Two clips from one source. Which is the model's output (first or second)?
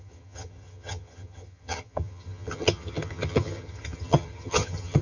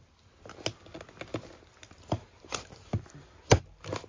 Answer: first